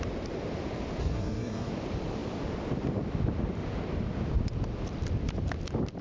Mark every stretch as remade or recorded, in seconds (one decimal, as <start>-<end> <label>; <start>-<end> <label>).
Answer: 0.0-1.0 recorded; 1.0-1.7 remade; 1.7-6.0 recorded